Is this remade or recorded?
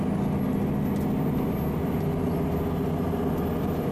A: recorded